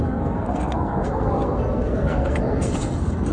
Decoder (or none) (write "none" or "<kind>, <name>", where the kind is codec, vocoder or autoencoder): codec, SNAC